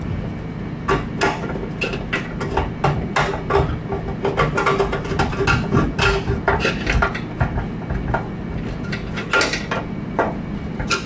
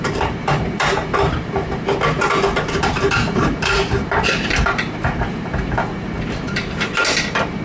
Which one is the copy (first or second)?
second